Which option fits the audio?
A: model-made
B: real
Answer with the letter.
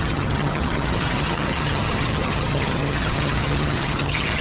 A